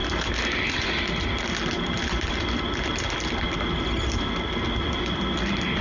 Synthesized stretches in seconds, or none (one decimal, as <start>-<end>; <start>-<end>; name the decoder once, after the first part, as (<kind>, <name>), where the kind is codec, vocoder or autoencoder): none